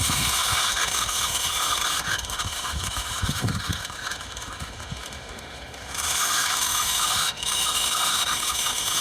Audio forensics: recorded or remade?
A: remade